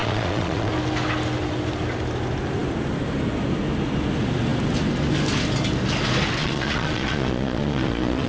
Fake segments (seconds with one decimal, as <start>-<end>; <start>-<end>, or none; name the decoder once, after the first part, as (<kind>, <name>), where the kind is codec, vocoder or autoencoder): 0.0-0.7 (vocoder, Vocos); 6.4-8.3